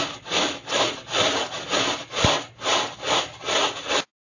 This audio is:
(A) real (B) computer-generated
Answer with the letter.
A